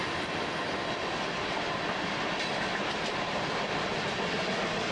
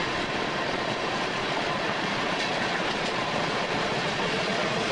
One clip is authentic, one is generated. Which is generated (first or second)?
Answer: second